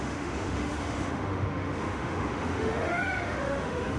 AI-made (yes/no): yes